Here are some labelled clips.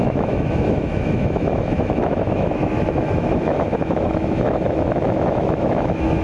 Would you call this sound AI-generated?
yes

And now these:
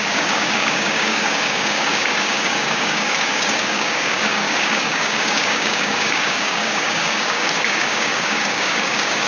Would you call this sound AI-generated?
yes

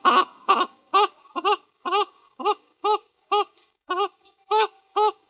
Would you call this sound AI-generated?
yes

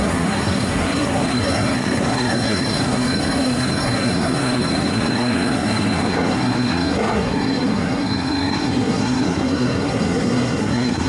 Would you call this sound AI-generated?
yes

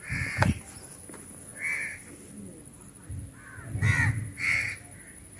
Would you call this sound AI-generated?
no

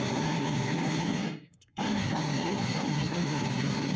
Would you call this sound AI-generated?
yes